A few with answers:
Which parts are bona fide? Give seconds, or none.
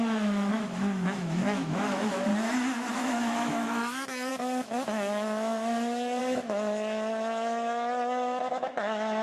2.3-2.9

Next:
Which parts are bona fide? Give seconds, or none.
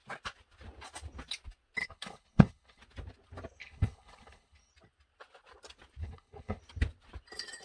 0.0-1.8; 2.8-3.6; 4.7-6.0; 6.6-7.6